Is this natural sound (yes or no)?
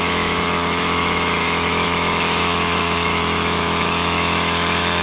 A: no